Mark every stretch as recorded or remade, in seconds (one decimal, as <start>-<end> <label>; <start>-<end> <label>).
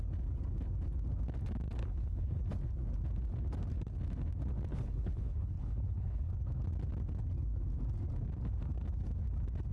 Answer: 0.0-1.8 recorded; 1.8-2.4 remade; 2.4-4.7 recorded; 4.7-6.3 remade; 6.3-9.7 recorded